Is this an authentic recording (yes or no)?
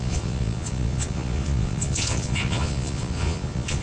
no